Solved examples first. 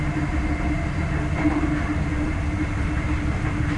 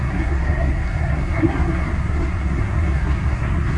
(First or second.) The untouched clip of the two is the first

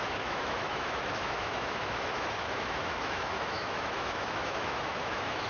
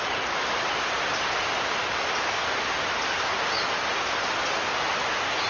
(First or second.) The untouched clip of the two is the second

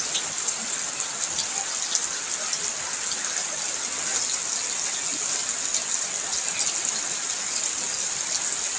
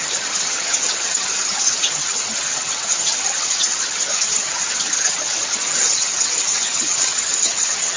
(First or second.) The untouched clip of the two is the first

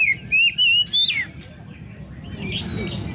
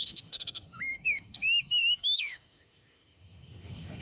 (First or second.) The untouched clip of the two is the first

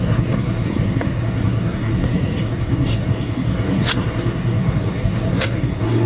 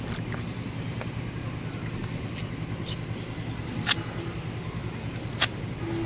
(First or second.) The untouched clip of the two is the second